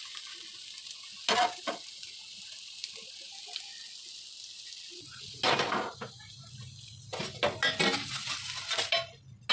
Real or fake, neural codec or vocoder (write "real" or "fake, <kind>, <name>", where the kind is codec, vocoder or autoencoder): real